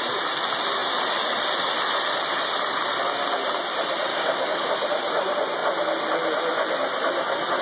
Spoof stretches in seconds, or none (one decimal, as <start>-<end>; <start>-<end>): 4.1-4.7